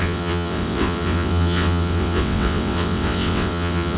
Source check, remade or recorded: remade